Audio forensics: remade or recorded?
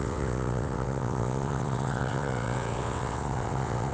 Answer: remade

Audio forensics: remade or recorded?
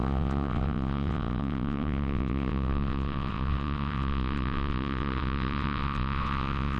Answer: remade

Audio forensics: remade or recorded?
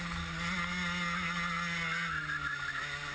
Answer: recorded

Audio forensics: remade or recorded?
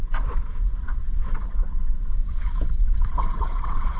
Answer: remade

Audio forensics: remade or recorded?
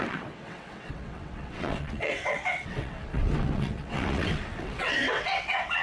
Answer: remade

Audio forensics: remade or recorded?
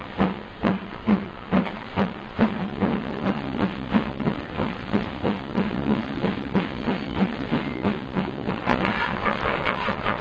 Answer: remade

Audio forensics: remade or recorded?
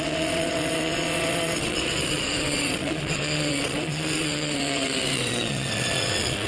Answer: remade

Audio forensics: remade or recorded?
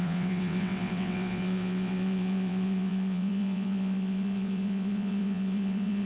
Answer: remade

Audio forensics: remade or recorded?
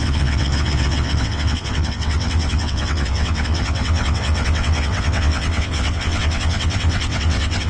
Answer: remade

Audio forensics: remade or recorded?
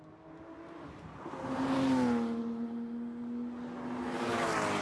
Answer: recorded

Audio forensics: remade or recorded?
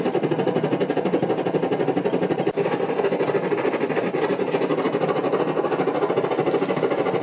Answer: recorded